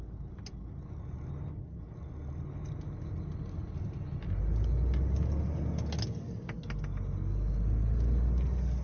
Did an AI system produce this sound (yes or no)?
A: no